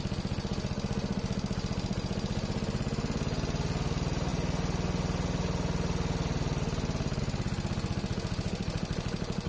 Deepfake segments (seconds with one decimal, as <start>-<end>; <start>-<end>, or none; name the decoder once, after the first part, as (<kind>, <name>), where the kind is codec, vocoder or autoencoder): none